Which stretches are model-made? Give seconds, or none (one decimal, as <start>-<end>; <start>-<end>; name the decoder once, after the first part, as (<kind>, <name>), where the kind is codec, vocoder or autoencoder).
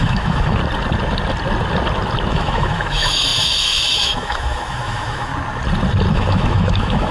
0.0-0.6 (autoencoder, DAC-VAE); 2.3-5.3; 6.1-7.1